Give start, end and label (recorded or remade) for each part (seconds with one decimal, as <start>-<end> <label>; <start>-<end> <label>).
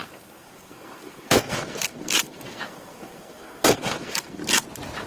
0.0-4.4 remade; 4.4-5.1 recorded